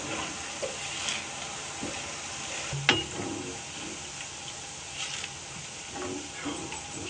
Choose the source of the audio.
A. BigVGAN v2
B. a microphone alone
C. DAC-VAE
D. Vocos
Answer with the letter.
B